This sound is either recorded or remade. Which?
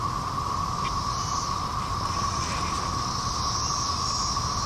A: recorded